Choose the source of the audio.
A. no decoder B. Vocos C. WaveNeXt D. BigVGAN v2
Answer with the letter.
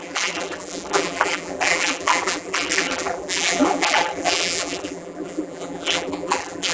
D